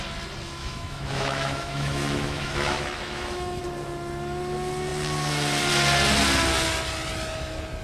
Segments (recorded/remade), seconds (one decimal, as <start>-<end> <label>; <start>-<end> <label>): 0.0-0.6 recorded; 0.6-3.6 remade; 3.6-7.8 recorded